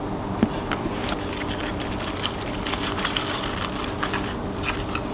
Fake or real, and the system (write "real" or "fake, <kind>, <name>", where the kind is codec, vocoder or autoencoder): real